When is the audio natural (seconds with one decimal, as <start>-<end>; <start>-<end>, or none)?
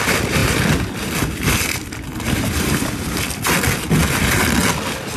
0.0-5.2